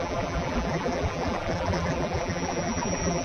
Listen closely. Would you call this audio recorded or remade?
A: remade